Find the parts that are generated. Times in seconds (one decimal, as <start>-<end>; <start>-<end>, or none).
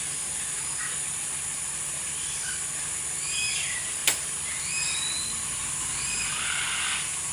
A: 4.0-6.3